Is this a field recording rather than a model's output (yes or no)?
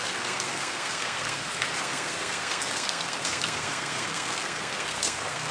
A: no